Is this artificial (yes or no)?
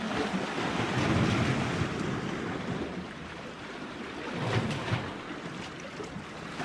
no